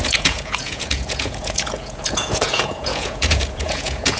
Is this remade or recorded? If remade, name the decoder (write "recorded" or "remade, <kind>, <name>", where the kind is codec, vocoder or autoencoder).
remade, vocoder, Vocos